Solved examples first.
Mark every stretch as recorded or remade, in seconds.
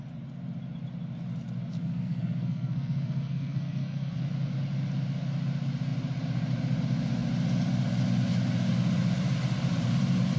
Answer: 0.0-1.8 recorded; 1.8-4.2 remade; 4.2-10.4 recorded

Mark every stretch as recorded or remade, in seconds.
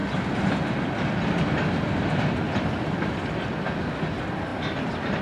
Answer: 0.0-5.2 recorded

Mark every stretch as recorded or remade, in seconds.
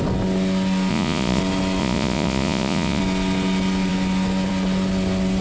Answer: 0.0-0.9 recorded; 0.9-1.4 remade; 1.4-1.8 recorded; 1.8-3.0 remade; 3.0-5.4 recorded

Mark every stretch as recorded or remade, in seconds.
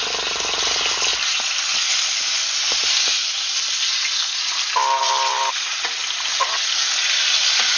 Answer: 0.0-7.8 recorded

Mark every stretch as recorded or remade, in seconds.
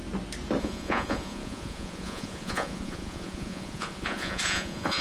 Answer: 0.0-0.6 recorded; 0.6-5.0 remade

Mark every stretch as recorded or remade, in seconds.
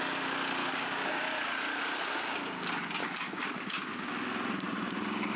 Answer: 0.0-0.6 recorded; 0.6-1.1 remade; 1.1-3.0 recorded; 3.0-4.1 remade; 4.1-5.4 recorded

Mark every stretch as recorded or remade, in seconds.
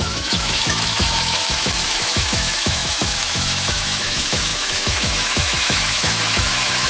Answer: 0.0-6.9 remade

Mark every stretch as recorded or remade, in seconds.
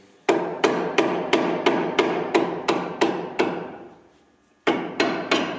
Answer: 0.0-0.5 recorded; 0.5-3.9 remade; 3.9-5.6 recorded